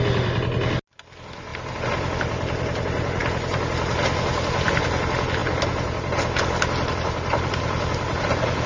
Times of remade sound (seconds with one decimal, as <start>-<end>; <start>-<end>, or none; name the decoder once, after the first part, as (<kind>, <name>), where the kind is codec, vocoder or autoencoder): none